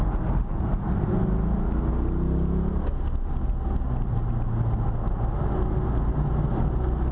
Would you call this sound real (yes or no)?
yes